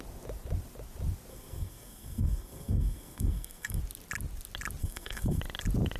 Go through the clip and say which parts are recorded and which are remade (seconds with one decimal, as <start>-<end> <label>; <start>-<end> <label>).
0.0-1.3 recorded; 1.3-3.8 remade; 3.8-4.8 recorded; 4.8-5.4 remade; 5.4-6.0 recorded